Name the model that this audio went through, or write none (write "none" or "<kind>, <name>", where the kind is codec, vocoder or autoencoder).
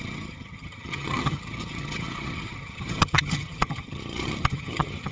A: vocoder, HiFi-GAN